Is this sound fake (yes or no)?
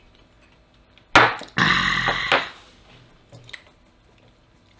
no